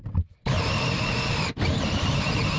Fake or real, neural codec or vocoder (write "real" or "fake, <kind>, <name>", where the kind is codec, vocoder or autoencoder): real